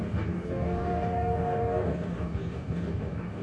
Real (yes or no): no